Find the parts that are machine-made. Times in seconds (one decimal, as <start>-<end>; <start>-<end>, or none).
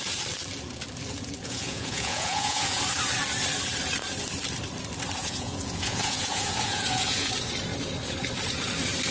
1.4-2.8; 5.2-7.3